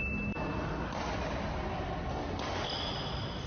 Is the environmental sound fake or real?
real